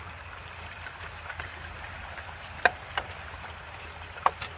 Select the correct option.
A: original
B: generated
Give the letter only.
A